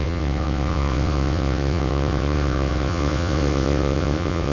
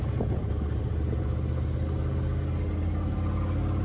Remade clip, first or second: first